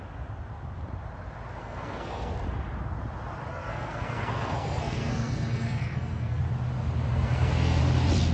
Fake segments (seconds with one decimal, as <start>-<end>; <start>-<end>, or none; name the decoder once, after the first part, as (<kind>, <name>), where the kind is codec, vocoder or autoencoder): 1.6-2.3 (codec, SNAC); 3.5-6.4; 7.1-7.8